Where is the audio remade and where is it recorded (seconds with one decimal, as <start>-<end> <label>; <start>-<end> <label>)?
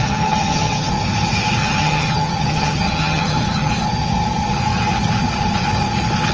0.0-0.9 remade; 0.9-1.6 recorded; 1.6-3.7 remade; 3.7-6.3 recorded